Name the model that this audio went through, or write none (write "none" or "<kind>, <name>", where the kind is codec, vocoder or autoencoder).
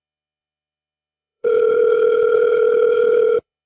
codec, HILCodec